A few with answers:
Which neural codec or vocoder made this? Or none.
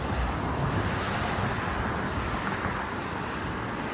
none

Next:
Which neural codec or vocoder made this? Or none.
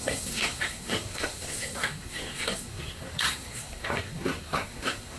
codec, SNAC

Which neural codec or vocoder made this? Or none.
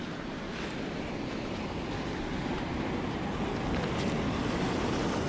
none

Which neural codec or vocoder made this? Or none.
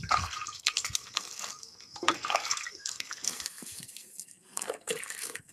codec, SNAC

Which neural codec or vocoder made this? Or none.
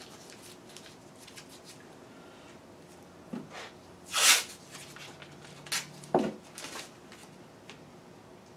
none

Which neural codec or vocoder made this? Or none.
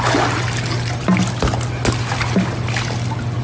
none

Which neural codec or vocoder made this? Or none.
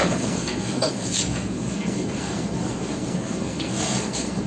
codec, SNAC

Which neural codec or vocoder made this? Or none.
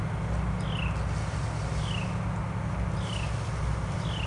none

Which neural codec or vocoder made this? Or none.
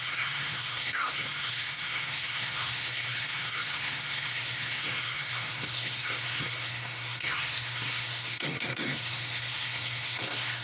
codec, SNAC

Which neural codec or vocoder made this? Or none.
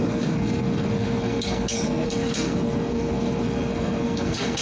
codec, SNAC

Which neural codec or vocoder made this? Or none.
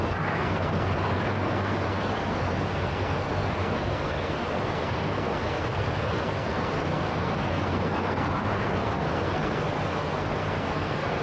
codec, SNAC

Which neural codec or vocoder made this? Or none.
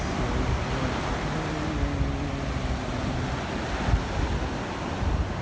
none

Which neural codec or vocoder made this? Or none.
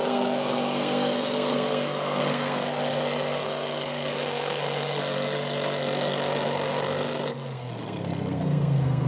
codec, SNAC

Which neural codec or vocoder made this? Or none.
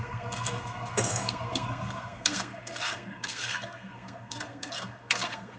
codec, SNAC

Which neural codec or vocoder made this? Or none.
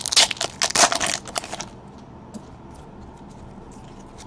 none